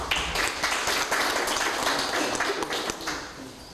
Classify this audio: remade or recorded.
recorded